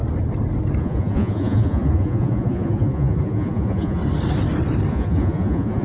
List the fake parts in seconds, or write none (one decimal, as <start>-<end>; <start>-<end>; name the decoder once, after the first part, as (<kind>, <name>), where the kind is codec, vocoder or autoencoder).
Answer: 0.8-4.0 (vocoder, Vocos); 4.9-5.8